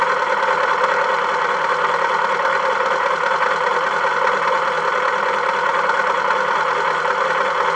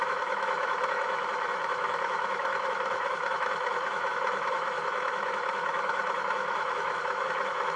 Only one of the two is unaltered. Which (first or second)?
first